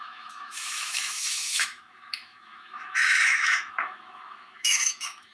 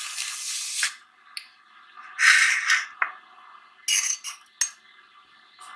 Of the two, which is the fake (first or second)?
first